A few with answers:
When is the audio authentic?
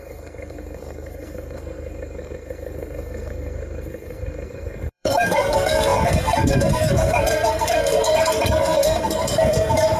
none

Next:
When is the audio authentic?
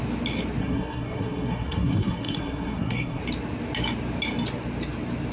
0.0-0.6; 3.2-5.3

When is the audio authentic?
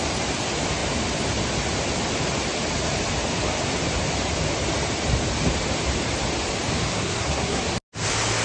0.0-6.9; 7.6-8.4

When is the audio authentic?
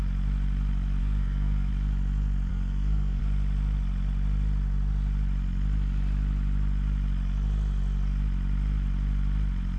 0.0-1.0; 1.7-2.5; 3.2-9.8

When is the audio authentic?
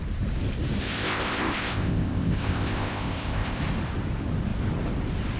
0.0-0.8; 3.6-5.4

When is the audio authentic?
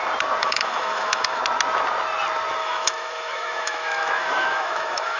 0.0-0.4; 1.4-2.6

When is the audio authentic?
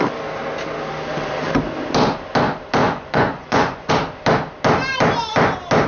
0.0-2.8; 3.9-5.9